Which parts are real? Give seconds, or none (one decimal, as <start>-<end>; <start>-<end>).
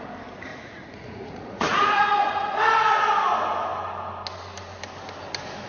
0.0-0.5; 2.6-5.7